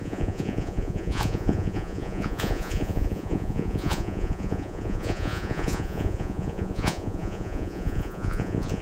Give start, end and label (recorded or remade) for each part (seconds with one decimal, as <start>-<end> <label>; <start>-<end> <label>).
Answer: 0.0-8.8 remade